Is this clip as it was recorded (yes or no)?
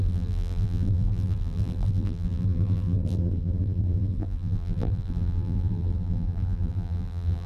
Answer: no